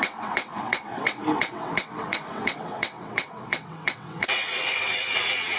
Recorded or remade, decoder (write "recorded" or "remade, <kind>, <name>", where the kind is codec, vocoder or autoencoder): remade, vocoder, WaveNeXt